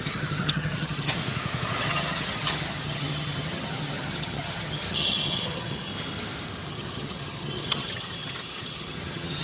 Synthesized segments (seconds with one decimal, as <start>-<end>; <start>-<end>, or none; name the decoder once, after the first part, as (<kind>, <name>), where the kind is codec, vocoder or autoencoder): 0.0-1.2 (vocoder, HiFi-GAN); 1.8-5.9; 6.7-9.4